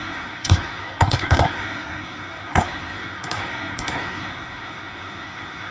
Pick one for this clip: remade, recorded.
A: remade